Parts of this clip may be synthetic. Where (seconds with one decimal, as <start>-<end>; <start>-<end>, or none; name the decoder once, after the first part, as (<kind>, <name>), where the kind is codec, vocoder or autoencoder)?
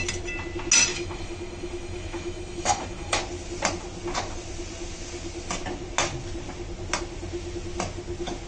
0.9-3.2 (autoencoder, DAC-VAE)